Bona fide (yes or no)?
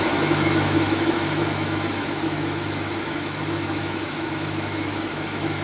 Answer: no